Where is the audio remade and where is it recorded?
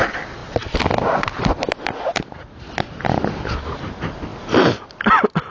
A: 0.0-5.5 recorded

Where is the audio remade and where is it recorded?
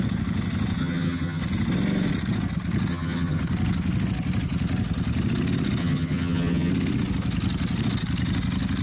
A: 0.0-0.8 recorded; 0.8-1.4 remade; 1.4-2.9 recorded; 2.9-3.4 remade; 3.4-5.8 recorded; 5.8-6.7 remade; 6.7-8.8 recorded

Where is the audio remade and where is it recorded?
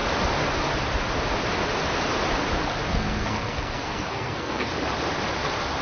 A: 0.0-2.9 recorded; 2.9-4.7 remade; 4.7-5.8 recorded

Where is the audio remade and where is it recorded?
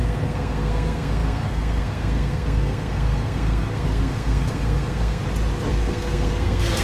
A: 0.0-5.2 remade; 5.2-5.7 recorded; 5.7-6.8 remade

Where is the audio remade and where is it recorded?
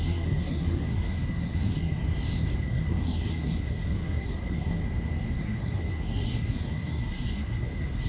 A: 0.0-2.0 remade; 2.0-2.6 recorded; 2.6-4.8 remade; 4.8-5.4 recorded; 5.4-8.1 remade